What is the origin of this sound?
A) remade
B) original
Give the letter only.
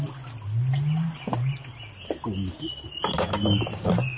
B